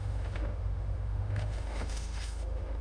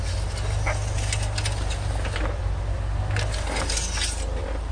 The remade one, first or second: first